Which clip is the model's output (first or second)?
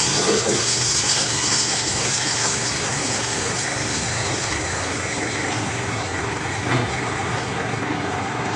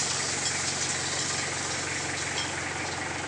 first